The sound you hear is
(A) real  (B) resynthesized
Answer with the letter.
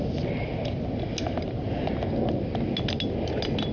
A